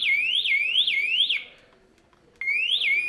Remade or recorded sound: recorded